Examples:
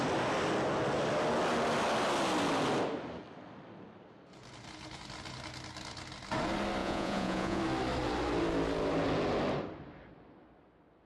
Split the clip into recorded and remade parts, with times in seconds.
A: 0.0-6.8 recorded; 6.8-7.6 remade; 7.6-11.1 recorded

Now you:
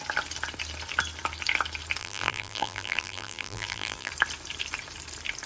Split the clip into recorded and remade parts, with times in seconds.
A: 0.0-2.0 recorded; 2.0-4.1 remade; 4.1-5.5 recorded

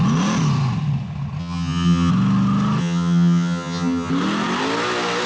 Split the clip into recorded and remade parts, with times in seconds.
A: 0.0-1.4 recorded; 1.4-2.1 remade; 2.1-2.8 recorded; 2.8-4.1 remade; 4.1-5.3 recorded

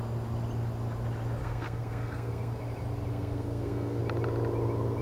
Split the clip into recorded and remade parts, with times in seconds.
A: 0.0-1.4 recorded; 1.4-2.6 remade; 2.6-3.1 recorded; 3.1-4.0 remade; 4.0-5.0 recorded

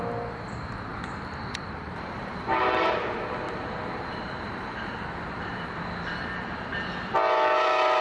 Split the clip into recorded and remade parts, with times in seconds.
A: 0.0-0.9 recorded; 0.9-4.9 remade; 4.9-8.0 recorded

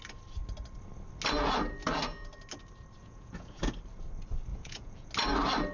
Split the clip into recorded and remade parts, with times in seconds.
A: 0.0-3.0 recorded; 3.0-3.6 remade; 3.6-4.5 recorded; 4.5-5.1 remade; 5.1-5.7 recorded